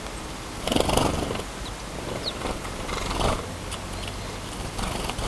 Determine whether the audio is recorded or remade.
recorded